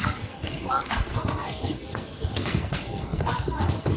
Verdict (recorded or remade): remade